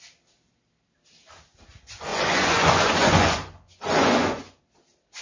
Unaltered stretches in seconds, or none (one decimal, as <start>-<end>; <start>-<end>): 0.0-2.1; 4.6-5.2